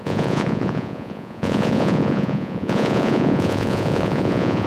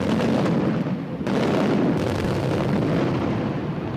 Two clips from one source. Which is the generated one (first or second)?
first